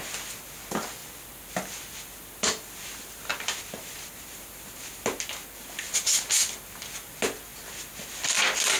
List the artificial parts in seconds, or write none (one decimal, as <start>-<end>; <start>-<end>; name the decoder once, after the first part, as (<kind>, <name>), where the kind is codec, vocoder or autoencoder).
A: 1.0-5.2 (vocoder, BigVGAN v2)